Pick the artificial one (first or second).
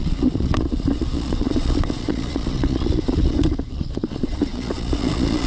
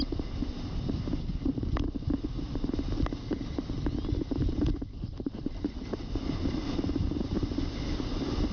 first